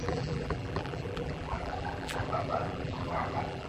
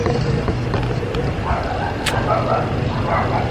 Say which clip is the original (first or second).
second